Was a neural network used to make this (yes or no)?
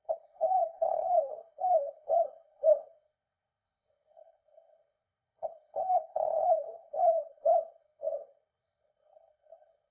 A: yes